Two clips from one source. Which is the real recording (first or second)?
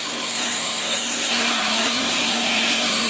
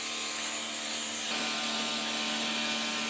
second